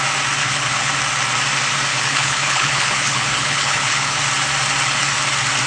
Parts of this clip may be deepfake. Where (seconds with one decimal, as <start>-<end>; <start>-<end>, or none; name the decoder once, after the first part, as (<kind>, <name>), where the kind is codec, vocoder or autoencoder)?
0.4-0.9 (codec, HILCodec); 1.9-4.2